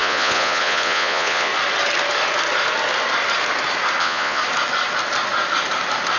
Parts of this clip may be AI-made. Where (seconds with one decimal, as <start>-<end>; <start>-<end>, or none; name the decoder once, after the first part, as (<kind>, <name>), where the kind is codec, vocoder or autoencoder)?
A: 0.0-1.5 (vocoder, Vocos); 4.0-4.4